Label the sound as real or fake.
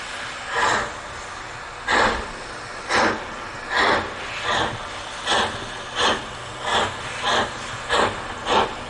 real